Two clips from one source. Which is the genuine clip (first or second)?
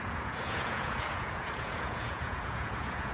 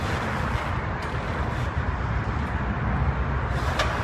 second